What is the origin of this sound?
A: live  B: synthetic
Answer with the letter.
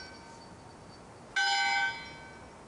A